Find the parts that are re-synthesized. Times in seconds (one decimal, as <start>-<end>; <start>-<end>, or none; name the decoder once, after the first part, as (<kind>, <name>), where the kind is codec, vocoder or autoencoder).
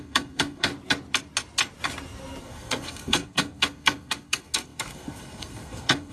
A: 0.0-0.7 (codec, SNAC); 2.4-6.1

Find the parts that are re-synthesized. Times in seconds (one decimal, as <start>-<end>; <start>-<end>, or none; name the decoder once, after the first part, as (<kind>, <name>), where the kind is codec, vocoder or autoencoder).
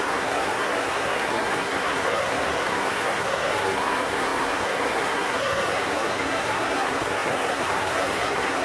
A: 0.0-8.6 (codec, SNAC)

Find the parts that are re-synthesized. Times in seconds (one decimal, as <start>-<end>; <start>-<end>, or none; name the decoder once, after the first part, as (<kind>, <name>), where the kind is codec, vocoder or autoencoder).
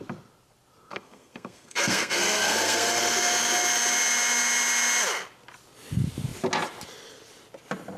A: 0.9-3.0 (codec, SNAC)